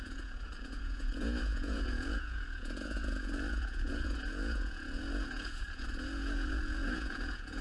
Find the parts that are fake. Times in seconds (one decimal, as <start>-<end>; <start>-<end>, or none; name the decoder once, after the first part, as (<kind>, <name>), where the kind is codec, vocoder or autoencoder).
0.0-7.6 (vocoder, Vocos)